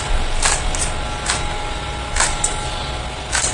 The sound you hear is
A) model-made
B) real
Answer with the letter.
B